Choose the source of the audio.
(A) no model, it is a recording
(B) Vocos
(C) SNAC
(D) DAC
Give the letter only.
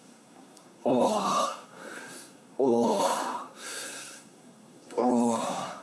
C